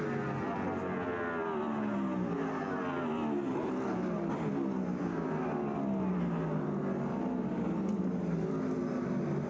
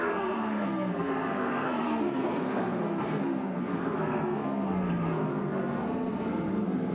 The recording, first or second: first